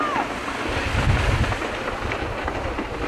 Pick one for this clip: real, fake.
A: real